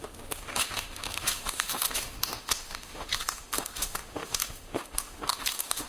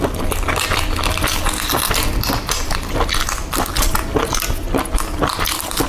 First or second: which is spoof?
first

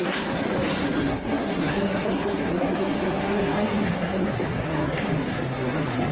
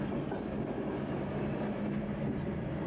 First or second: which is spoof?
first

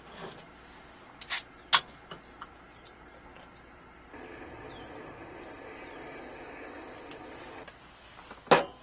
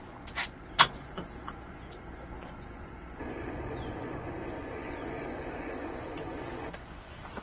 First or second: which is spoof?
second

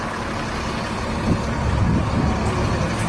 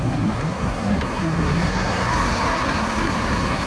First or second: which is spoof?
second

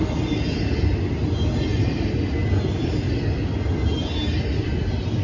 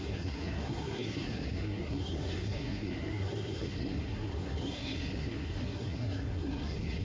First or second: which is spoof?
second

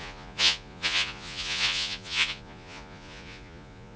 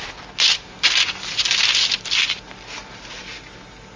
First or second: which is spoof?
first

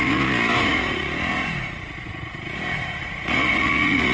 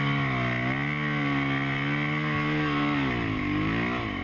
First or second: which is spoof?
first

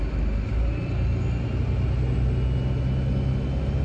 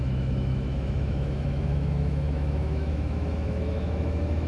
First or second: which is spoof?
second